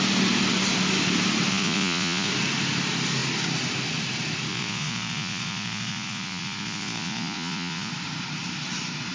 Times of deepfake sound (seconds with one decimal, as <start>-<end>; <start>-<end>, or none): 1.5-2.3; 4.5-7.9